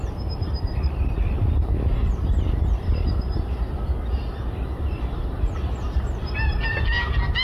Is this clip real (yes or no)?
yes